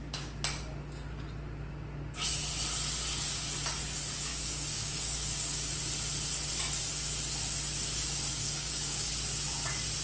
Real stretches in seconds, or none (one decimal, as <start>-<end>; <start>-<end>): 0.0-4.3; 5.7-8.3; 9.1-10.0